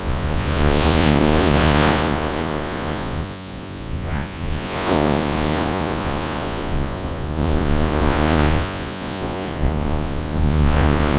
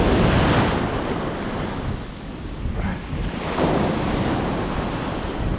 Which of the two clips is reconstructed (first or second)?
first